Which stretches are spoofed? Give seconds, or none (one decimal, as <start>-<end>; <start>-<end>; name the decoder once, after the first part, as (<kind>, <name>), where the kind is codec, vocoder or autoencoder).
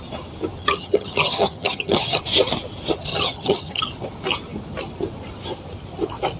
0.6-2.2 (vocoder, HiFi-GAN); 3.1-3.8